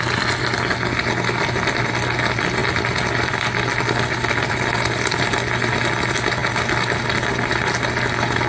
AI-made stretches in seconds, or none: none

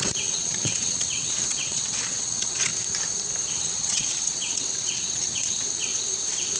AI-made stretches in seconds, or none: 0.0-2.7 (vocoder, WaveNeXt); 3.5-5.9

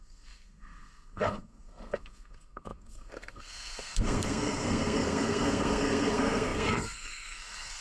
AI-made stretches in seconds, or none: 0.0-7.8 (codec, SNAC)

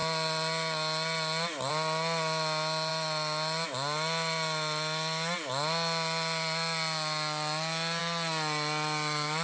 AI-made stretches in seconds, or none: none

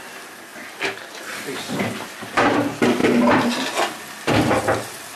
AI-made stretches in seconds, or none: none

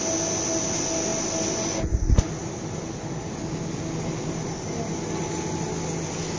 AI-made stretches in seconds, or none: none

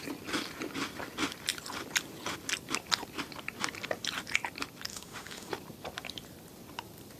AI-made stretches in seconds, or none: 4.9-5.5 (autoencoder, DAC-VAE)